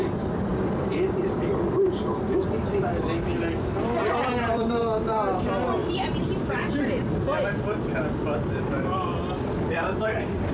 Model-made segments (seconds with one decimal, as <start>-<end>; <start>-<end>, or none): 0.5-4.8; 5.8-6.5